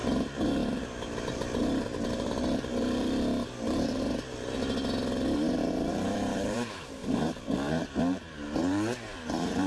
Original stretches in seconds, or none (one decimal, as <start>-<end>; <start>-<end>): 4.6-5.5